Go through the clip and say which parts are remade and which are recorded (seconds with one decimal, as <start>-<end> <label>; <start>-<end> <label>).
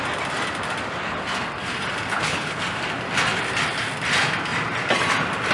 0.0-2.1 recorded; 2.1-2.6 remade; 2.6-5.5 recorded